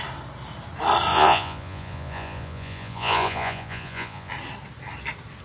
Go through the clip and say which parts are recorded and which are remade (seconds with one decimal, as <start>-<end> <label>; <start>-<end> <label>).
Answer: 0.0-1.1 recorded; 1.1-4.3 remade; 4.3-5.4 recorded